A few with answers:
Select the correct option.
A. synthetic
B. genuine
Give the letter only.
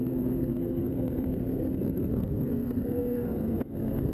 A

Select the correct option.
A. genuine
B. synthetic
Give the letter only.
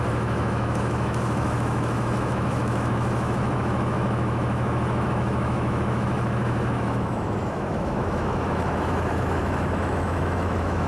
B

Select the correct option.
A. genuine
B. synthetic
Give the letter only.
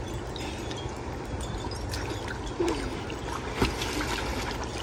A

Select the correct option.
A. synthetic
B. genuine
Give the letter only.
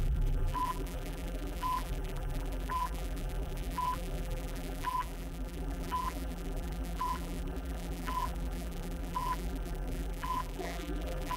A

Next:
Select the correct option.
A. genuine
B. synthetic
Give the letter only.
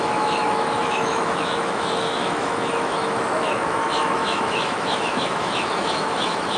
B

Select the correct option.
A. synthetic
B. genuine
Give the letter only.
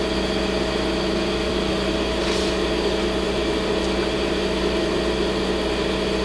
B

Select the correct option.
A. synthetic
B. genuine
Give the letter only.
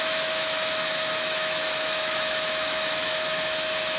A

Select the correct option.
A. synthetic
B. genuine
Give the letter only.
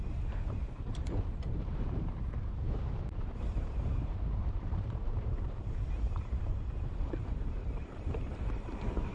A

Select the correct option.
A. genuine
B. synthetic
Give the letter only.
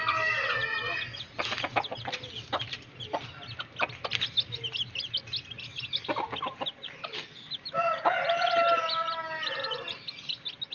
A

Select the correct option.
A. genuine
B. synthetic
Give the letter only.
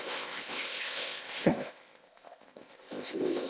B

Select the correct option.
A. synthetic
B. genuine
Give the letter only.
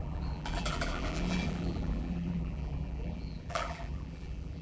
A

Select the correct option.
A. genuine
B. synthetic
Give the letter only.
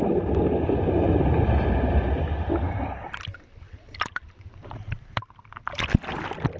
A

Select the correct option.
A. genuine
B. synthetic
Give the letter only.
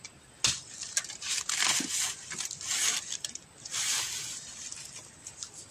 A